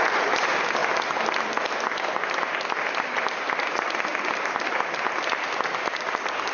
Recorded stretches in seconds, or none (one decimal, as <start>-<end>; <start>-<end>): 0.0-4.1; 4.7-6.5